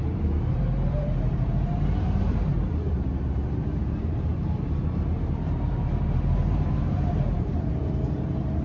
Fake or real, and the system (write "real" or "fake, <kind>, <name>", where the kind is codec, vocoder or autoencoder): fake, vocoder, BigVGAN v2